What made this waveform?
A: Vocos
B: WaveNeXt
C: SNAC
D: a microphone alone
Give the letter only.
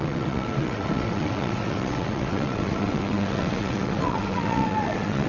B